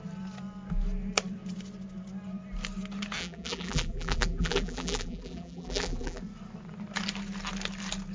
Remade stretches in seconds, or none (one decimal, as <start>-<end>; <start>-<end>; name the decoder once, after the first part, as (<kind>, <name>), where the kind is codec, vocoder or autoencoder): 3.2-6.2 (vocoder, BigVGAN v2)